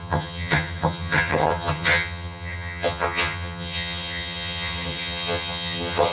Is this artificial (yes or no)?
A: yes